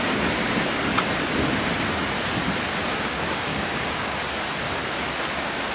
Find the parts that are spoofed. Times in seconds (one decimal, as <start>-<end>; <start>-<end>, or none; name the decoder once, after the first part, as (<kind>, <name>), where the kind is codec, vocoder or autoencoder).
0.0-0.9 (codec, DAC); 2.8-4.2; 5.3-5.7